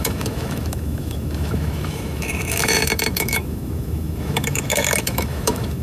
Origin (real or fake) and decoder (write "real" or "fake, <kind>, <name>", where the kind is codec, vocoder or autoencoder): fake, autoencoder, DAC-VAE